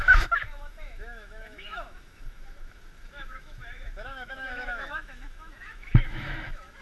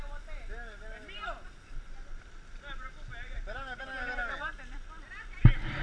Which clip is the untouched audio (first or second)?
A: second